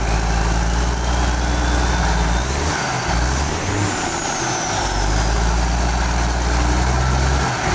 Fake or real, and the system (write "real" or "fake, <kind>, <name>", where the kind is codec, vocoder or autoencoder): real